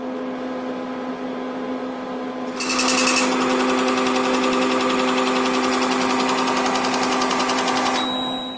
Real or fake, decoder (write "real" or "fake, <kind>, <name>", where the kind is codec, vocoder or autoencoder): real